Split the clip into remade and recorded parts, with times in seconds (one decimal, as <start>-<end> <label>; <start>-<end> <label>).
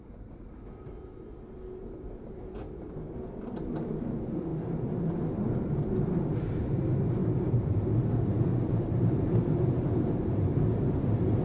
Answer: 0.0-1.8 recorded; 1.8-2.4 remade; 2.4-7.2 recorded; 7.2-7.9 remade; 7.9-8.5 recorded; 8.5-10.3 remade; 10.3-11.4 recorded